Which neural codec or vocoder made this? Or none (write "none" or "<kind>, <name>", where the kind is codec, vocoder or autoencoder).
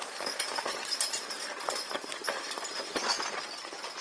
none